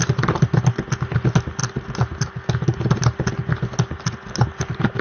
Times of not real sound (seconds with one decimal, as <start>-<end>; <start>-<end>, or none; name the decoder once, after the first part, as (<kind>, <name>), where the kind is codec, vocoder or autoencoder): none